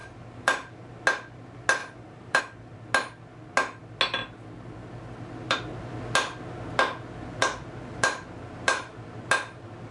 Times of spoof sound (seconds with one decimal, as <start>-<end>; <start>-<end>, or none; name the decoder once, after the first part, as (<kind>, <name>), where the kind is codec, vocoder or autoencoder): 0.0-0.8 (vocoder, BigVGAN v2); 1.8-2.4